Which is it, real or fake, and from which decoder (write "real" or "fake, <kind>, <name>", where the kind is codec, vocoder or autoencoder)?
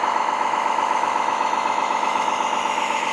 fake, autoencoder, DAC-VAE